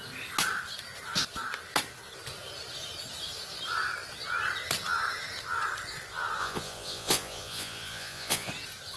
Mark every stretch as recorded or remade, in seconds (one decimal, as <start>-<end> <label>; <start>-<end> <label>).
0.0-6.4 recorded; 6.4-8.5 remade; 8.5-9.0 recorded